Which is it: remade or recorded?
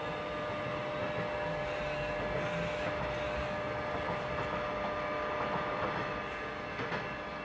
recorded